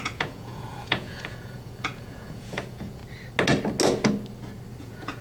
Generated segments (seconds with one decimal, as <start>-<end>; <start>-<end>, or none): 0.0-3.0; 4.8-5.2